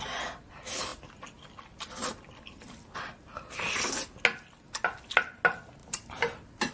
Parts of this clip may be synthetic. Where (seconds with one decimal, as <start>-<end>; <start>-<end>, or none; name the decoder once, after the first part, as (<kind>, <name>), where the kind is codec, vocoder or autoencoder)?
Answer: 5.8-6.7 (vocoder, BigVGAN v2)

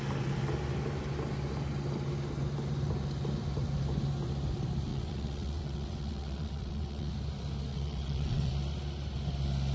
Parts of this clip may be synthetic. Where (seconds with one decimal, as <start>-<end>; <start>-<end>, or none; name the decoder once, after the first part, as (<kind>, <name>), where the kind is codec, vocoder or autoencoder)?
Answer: 4.9-7.1 (vocoder, WaveNeXt); 7.7-8.5

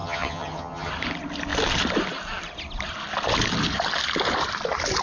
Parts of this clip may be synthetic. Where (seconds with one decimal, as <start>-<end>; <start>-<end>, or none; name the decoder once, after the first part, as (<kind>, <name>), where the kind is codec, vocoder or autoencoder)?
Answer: 0.0-0.9 (vocoder, HiFi-GAN)